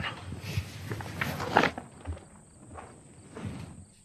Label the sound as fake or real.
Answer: real